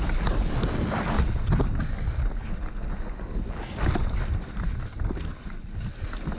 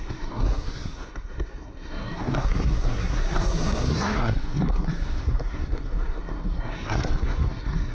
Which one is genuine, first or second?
first